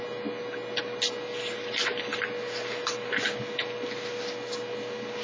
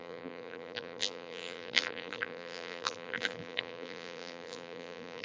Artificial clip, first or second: second